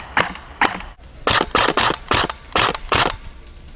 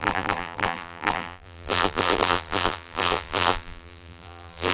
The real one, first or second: first